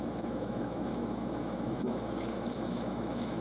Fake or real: fake